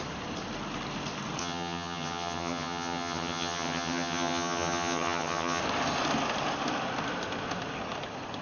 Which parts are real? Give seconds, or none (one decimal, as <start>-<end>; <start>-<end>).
0.0-1.4; 5.6-8.4